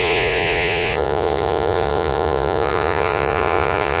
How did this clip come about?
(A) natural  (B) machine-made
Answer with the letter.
B